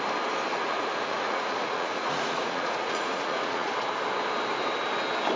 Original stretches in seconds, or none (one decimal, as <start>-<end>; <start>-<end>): 0.0-0.5; 3.7-5.4